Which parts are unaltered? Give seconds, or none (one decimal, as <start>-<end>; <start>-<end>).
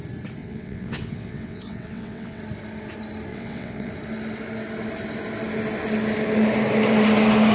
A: 0.0-0.4; 2.4-3.3; 3.9-7.5